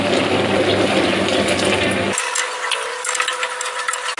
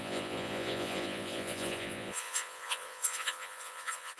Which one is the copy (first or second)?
second